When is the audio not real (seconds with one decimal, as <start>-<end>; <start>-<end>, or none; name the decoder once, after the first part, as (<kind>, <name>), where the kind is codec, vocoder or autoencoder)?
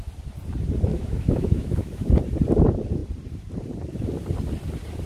0.9-2.1 (autoencoder, DAC-VAE)